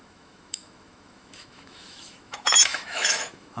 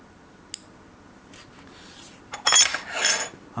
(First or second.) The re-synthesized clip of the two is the first